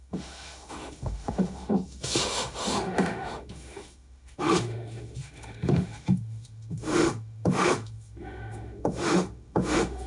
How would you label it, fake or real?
fake